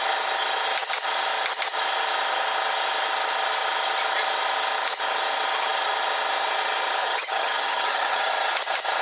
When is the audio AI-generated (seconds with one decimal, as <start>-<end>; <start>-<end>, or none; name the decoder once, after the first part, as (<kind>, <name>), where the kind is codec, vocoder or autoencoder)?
7.0-8.3 (vocoder, HiFi-GAN)